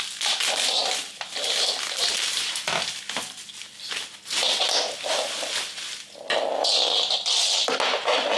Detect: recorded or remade recorded